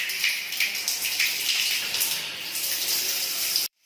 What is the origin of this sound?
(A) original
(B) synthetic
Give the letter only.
B